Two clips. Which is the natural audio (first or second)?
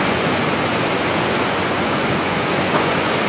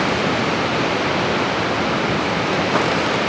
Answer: second